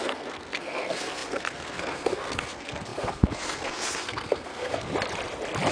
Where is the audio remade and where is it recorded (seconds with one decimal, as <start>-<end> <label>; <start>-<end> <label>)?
0.0-4.9 remade; 4.9-5.7 recorded